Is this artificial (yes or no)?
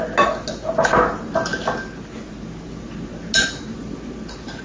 no